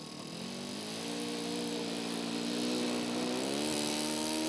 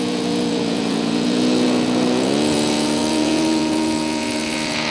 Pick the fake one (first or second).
second